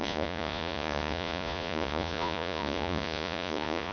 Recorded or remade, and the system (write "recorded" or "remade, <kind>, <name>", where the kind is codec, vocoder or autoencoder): remade, vocoder, Vocos